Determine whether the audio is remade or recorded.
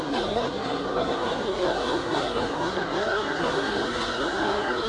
remade